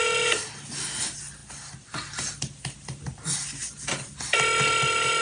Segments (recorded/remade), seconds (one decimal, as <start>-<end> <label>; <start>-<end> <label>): 0.0-5.2 recorded